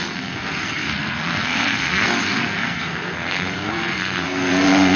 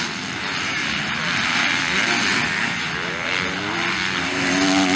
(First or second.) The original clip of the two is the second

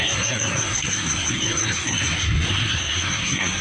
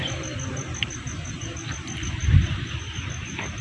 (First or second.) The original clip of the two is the second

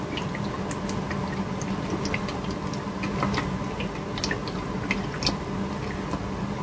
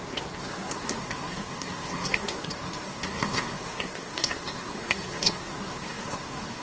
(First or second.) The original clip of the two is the first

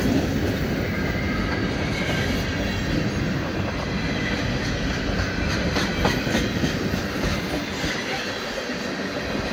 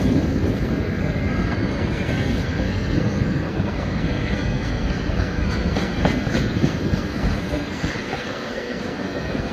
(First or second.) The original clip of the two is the first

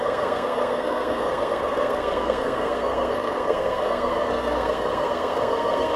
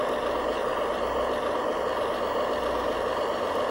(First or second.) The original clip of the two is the second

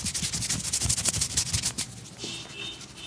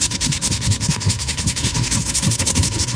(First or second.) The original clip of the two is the first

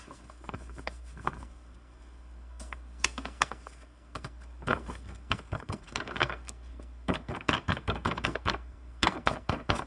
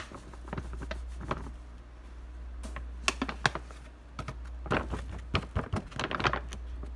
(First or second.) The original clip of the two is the second